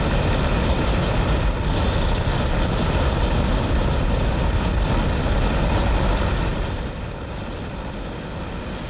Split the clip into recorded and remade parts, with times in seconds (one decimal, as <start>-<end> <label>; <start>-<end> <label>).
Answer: 0.0-8.9 recorded

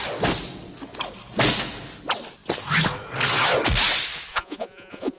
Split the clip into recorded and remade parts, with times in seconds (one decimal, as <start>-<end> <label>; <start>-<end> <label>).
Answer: 0.0-4.3 recorded; 4.3-5.2 remade

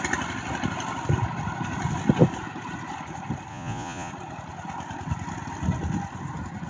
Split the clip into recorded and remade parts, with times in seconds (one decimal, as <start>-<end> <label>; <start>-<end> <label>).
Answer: 0.0-3.5 recorded; 3.5-4.1 remade; 4.1-6.7 recorded

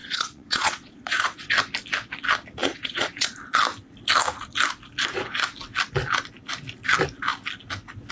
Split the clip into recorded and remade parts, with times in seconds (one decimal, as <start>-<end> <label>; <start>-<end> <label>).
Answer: 0.0-1.5 remade; 1.5-2.6 recorded; 2.6-3.3 remade; 3.3-8.1 recorded

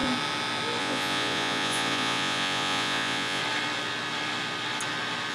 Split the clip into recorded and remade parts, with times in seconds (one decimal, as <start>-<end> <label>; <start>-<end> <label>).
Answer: 0.0-0.8 recorded; 0.8-3.4 remade; 3.4-5.3 recorded

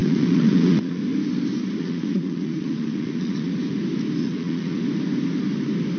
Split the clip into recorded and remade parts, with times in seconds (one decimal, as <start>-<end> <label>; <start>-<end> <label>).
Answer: 0.0-1.0 remade; 1.0-1.8 recorded; 1.8-3.5 remade; 3.5-4.2 recorded; 4.2-4.8 remade; 4.8-6.0 recorded